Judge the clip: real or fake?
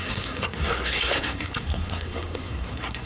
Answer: fake